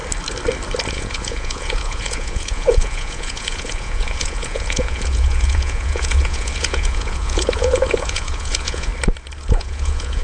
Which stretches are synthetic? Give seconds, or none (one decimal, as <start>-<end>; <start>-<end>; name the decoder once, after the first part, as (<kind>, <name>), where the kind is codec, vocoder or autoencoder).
0.9-8.9 (vocoder, Vocos); 9.5-10.2